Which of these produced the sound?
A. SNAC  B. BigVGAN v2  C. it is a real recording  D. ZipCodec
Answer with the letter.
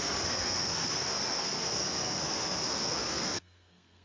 A